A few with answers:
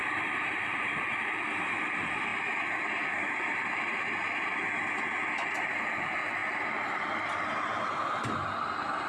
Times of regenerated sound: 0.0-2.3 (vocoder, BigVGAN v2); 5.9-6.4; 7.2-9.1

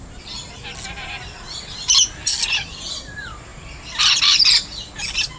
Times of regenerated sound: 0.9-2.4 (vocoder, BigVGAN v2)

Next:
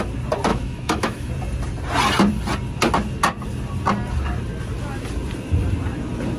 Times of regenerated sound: 0.5-1.3 (autoencoder, DAC-VAE)

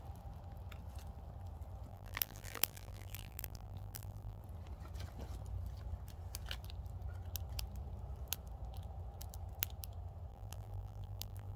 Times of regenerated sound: 1.9-4.4 (vocoder, BigVGAN v2); 10.3-11.6

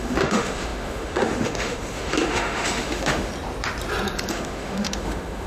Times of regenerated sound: 0.0-3.3 (autoencoder, DAC-VAE); 4.3-5.5